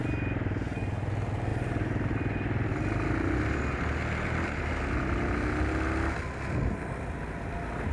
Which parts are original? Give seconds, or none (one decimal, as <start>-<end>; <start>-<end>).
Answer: 0.0-7.9